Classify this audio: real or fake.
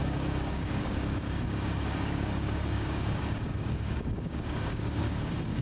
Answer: fake